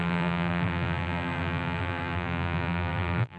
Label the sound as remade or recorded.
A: remade